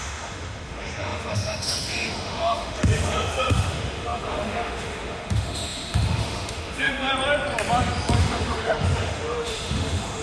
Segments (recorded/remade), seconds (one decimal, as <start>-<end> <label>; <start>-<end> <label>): 0.0-7.1 remade; 7.1-8.2 recorded; 8.2-10.2 remade